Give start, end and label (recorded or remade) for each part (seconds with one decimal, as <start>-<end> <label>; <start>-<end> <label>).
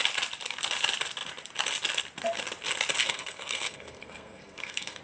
0.0-3.0 recorded; 3.0-5.0 remade